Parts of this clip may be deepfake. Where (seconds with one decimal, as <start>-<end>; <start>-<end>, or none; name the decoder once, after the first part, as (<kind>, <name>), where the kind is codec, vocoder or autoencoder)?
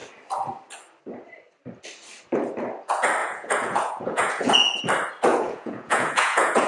3.2-4.8 (vocoder, Vocos); 5.3-6.7